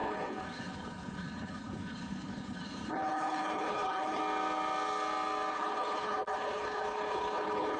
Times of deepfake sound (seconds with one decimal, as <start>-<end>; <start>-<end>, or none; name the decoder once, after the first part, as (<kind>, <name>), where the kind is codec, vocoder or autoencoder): 0.0-4.2 (codec, HILCodec); 5.5-7.8